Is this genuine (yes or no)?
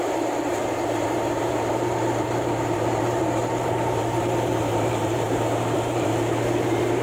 no